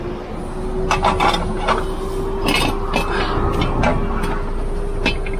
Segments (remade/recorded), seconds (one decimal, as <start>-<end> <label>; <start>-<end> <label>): 0.0-5.4 recorded